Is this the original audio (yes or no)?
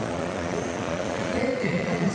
no